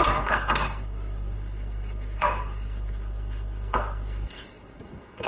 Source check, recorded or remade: remade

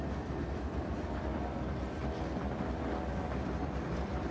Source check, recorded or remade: recorded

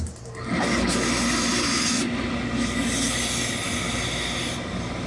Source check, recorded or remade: recorded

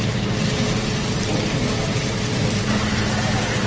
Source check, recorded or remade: recorded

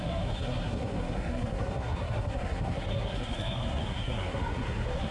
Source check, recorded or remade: remade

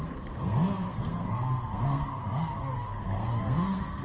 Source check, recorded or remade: remade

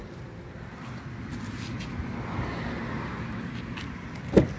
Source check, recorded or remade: recorded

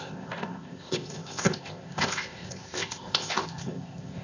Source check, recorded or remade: remade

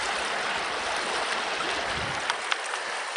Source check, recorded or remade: recorded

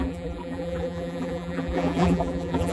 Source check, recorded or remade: remade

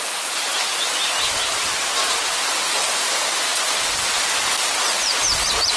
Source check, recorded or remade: remade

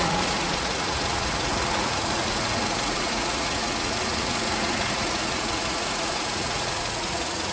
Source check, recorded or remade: remade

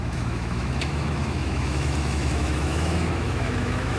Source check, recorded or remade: remade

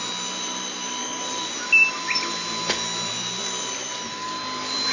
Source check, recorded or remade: recorded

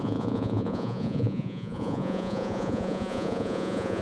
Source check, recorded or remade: remade